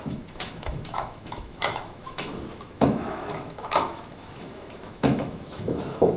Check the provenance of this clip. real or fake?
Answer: fake